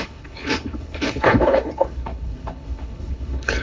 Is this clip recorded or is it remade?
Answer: remade